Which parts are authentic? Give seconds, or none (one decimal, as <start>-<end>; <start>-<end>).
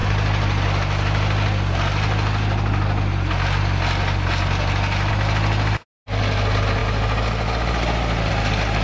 0.0-8.8